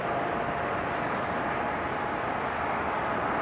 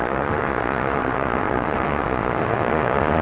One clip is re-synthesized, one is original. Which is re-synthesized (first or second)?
second